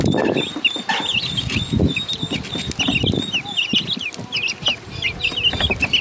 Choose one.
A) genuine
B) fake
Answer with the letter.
A